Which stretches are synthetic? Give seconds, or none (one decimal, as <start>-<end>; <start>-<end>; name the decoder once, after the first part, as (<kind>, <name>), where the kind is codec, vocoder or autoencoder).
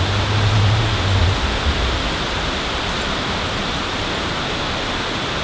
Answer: 1.2-4.0 (vocoder, BigVGAN v2)